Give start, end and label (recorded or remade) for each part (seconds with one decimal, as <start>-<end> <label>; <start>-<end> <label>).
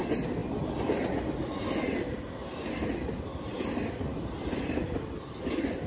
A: 0.0-5.9 recorded